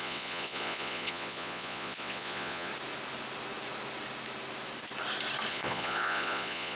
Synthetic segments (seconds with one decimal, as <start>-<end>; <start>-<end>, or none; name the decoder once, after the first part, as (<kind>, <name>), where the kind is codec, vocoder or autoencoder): 0.0-2.7 (vocoder, Vocos); 5.5-6.8